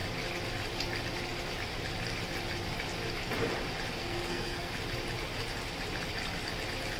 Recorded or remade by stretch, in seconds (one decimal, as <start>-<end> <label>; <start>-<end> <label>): 0.0-4.0 recorded; 4.0-4.7 remade; 4.7-7.0 recorded